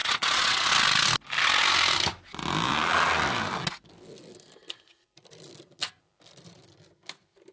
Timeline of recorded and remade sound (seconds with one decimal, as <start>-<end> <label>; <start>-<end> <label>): 0.0-0.7 remade; 0.7-7.5 recorded